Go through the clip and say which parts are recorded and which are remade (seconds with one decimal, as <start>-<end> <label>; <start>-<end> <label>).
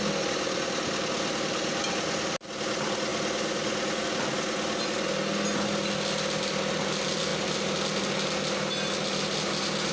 0.0-9.9 recorded